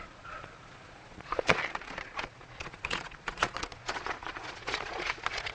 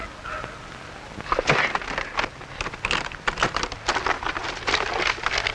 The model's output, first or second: first